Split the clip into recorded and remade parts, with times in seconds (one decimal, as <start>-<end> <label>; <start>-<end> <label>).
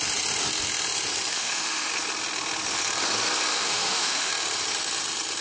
0.0-1.3 recorded; 1.3-1.9 remade; 1.9-3.5 recorded; 3.5-4.3 remade; 4.3-5.4 recorded